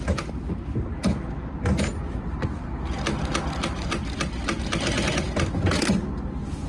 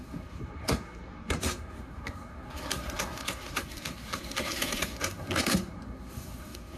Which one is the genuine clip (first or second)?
first